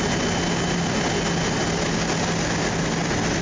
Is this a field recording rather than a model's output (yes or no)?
yes